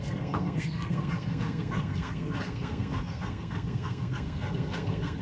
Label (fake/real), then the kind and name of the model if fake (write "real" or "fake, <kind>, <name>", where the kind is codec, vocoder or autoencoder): fake, codec, SNAC